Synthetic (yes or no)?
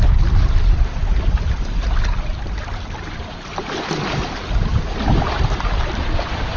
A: no